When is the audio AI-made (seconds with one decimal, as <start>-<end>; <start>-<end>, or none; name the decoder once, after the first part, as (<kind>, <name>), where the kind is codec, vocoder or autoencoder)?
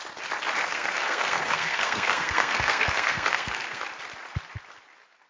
0.6-3.8 (codec, SNAC)